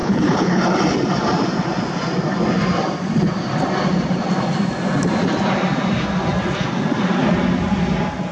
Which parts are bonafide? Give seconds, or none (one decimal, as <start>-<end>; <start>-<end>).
0.6-8.3